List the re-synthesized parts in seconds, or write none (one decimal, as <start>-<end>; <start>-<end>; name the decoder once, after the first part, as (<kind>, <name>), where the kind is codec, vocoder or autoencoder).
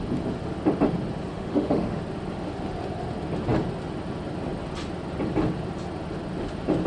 1.3-2.0 (autoencoder, DAC-VAE)